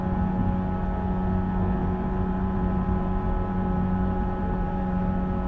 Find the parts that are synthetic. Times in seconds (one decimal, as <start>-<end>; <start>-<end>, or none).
1.8-5.1